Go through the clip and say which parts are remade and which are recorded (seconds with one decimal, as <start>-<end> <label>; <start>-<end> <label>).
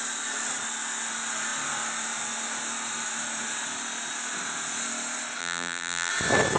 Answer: 0.0-5.4 recorded; 5.4-6.1 remade; 6.1-6.6 recorded